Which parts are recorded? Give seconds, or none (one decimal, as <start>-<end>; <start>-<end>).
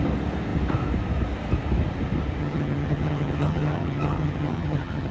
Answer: 0.0-2.4